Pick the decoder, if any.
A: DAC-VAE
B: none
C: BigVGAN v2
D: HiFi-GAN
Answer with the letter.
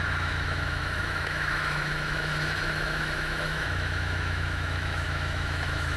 A